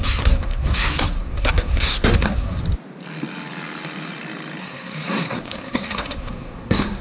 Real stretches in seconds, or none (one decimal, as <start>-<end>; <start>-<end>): 2.6-4.6